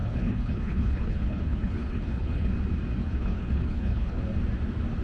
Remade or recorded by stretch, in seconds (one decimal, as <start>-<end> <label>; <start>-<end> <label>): 0.0-2.5 remade; 2.5-3.0 recorded; 3.0-4.2 remade; 4.2-5.0 recorded